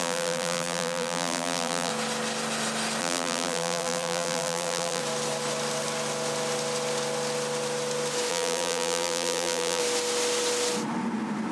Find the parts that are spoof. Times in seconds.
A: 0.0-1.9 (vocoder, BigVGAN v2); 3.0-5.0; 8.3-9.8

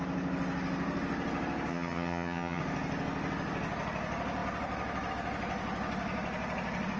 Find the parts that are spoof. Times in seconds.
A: 1.7-2.6 (vocoder, HiFi-GAN)

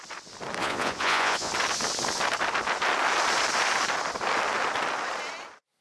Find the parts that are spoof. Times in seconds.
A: 0.6-1.5 (vocoder, Vocos)